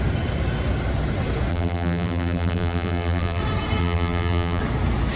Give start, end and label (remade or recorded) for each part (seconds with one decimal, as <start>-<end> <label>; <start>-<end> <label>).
0.0-1.5 recorded; 1.5-3.4 remade; 3.4-3.8 recorded; 3.8-4.6 remade; 4.6-5.2 recorded